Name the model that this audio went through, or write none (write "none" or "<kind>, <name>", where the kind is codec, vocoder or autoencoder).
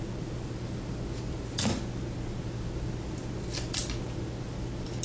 none